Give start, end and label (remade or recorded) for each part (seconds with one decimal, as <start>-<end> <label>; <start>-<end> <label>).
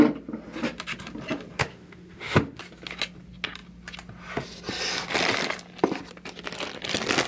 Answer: 0.0-1.6 recorded; 1.6-2.6 remade; 2.6-7.3 recorded